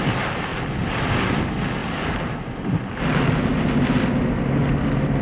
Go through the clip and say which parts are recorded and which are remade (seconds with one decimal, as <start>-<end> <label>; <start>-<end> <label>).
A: 0.0-5.2 recorded